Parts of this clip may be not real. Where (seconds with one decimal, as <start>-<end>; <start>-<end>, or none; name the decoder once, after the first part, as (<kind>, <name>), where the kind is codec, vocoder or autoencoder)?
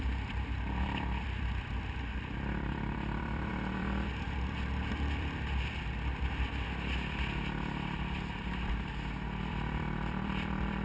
0.0-6.5 (vocoder, BigVGAN v2); 9.5-10.8